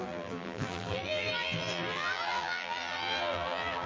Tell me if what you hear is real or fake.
fake